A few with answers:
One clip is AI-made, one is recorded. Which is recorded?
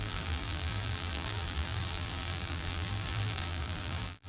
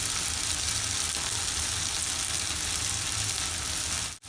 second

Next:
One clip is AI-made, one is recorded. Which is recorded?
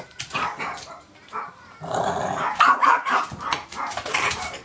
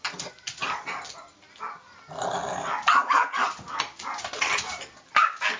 second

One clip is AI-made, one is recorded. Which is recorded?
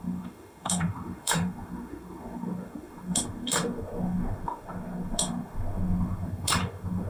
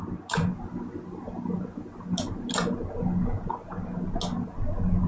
second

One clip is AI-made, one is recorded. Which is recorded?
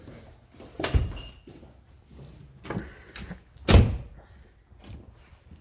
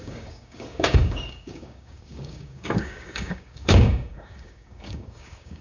first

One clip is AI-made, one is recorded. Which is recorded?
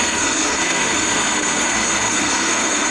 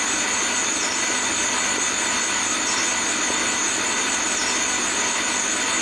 second